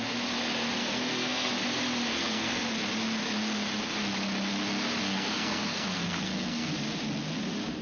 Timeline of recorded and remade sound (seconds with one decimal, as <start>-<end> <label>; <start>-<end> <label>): 0.0-0.8 recorded; 0.8-1.5 remade; 1.5-2.1 recorded; 2.1-2.6 remade; 2.6-5.0 recorded; 5.0-6.7 remade; 6.7-7.8 recorded